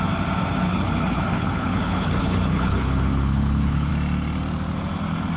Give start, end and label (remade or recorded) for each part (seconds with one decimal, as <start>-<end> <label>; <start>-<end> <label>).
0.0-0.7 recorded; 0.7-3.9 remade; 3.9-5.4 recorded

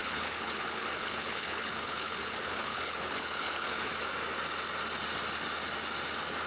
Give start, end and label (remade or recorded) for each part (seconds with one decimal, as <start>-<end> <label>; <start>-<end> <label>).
0.0-3.9 remade; 3.9-6.5 recorded

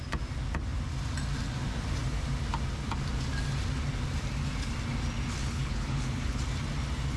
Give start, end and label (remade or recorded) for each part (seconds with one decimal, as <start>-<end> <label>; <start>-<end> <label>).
0.0-5.4 recorded; 5.4-6.4 remade; 6.4-7.2 recorded

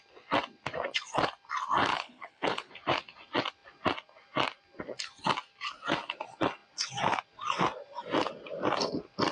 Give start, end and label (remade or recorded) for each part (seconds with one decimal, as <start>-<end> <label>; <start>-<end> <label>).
0.0-1.9 recorded; 1.9-2.7 remade; 2.7-9.3 recorded

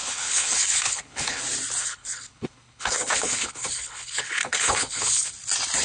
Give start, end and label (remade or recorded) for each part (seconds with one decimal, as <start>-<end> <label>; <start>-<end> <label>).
0.0-1.4 remade; 1.4-1.8 recorded; 1.8-5.3 remade; 5.3-5.8 recorded